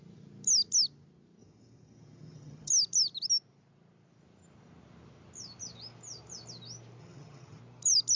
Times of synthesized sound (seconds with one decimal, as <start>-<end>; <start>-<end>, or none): 1.4-2.7; 7.0-7.6